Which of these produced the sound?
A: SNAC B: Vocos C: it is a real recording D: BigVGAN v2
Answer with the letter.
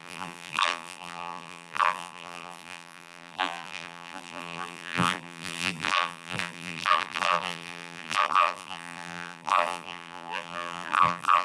D